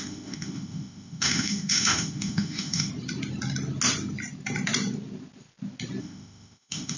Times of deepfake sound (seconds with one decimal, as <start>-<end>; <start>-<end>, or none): 0.0-2.9; 6.0-7.0